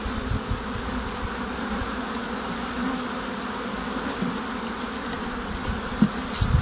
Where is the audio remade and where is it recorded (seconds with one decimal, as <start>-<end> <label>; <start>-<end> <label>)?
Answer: 0.0-6.6 recorded